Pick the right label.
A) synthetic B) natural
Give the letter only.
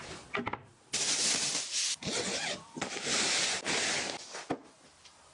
B